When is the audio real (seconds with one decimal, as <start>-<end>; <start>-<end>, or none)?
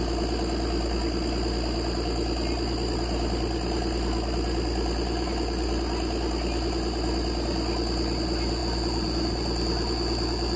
0.0-10.6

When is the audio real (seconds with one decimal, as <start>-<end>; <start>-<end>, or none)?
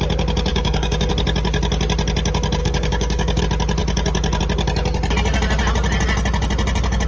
0.0-0.5; 1.1-2.6; 3.4-7.1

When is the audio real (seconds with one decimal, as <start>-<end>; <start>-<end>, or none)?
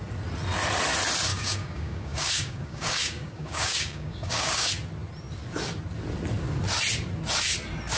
0.0-1.3; 4.7-8.0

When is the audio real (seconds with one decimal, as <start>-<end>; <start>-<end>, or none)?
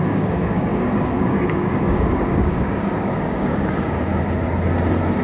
4.1-5.2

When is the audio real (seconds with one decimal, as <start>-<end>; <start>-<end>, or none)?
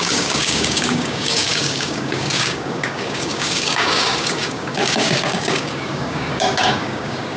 none